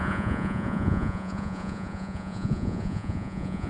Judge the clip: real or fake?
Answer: fake